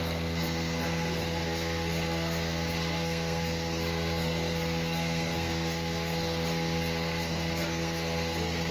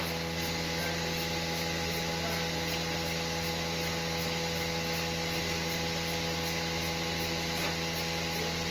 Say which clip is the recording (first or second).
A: second